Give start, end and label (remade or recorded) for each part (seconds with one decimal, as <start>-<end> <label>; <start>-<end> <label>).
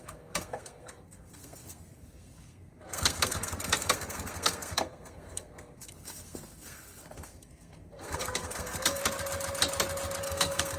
0.0-9.0 remade; 9.0-10.2 recorded; 10.2-10.8 remade